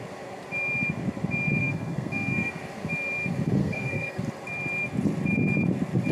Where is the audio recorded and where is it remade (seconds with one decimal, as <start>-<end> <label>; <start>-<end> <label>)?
0.0-1.6 recorded; 1.6-2.5 remade; 2.5-3.6 recorded; 3.6-4.2 remade; 4.2-6.1 recorded